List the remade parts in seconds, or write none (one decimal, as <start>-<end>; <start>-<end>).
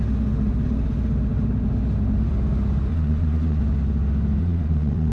2.9-3.6; 4.4-5.1